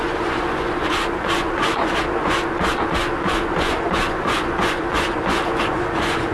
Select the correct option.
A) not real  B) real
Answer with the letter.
A